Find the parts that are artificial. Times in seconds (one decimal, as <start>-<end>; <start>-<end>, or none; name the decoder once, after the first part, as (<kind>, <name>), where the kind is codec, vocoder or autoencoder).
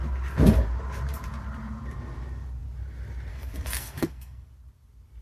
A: 3.3-4.5 (codec, SNAC)